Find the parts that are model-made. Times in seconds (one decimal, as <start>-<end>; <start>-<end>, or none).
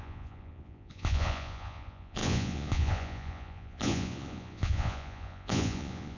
0.0-6.2